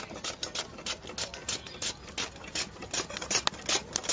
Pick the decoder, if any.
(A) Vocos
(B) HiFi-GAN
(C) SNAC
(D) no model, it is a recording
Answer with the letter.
D